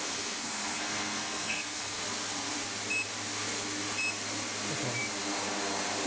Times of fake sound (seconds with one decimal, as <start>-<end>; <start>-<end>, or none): 0.0-2.0